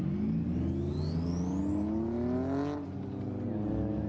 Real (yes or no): yes